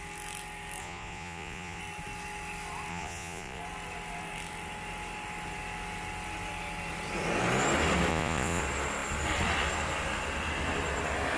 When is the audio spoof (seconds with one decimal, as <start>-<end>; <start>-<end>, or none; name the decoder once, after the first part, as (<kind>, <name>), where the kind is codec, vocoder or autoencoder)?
0.8-1.8 (vocoder, Vocos); 2.9-3.6; 8.1-8.6